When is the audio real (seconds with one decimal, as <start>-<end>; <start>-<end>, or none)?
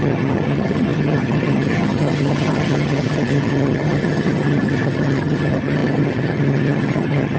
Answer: none